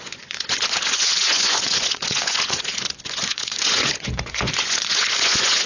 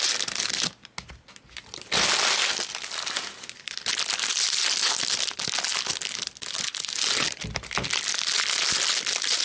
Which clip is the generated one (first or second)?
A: first